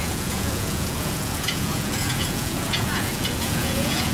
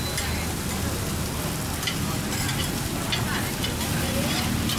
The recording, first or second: second